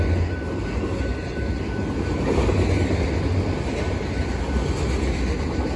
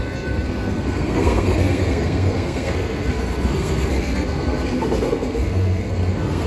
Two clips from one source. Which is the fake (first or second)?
second